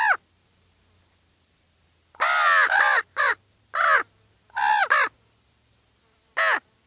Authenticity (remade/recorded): recorded